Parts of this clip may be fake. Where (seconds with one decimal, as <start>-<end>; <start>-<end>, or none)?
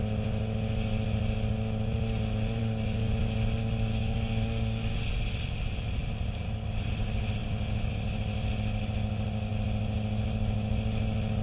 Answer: 2.6-3.1; 3.9-5.0